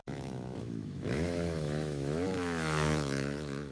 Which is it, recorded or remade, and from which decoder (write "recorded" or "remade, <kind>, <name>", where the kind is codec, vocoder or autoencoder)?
remade, autoencoder, DAC-VAE